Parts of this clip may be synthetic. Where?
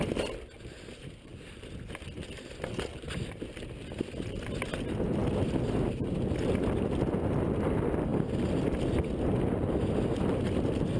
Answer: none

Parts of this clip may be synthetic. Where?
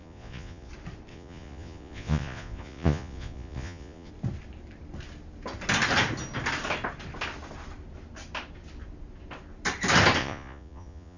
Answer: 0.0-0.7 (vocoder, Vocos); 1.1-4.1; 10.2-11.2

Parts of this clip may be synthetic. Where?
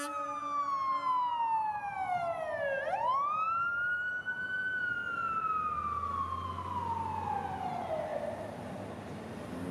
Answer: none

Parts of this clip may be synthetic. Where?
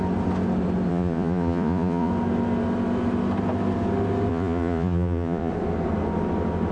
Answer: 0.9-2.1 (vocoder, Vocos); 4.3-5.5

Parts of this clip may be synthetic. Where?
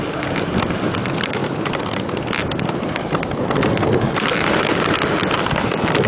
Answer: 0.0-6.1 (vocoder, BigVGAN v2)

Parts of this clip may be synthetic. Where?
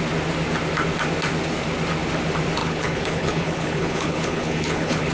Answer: 2.6-5.1 (codec, HILCodec)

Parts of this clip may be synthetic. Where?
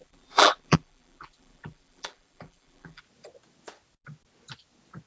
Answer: 0.0-3.0 (vocoder, BigVGAN v2)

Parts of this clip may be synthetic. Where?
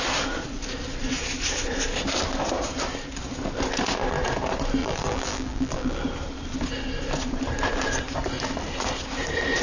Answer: 4.8-6.0 (vocoder, BigVGAN v2)